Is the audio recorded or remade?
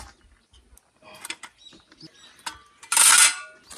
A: recorded